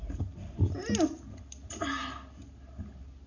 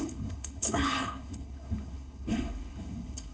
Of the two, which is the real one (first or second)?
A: first